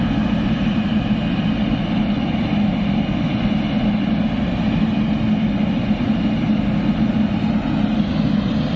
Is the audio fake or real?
real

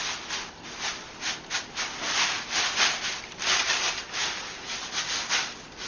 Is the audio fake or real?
real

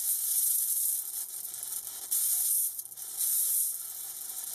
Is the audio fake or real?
real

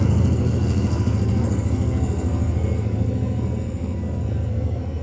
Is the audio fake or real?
fake